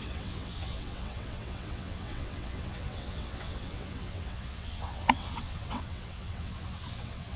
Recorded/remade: remade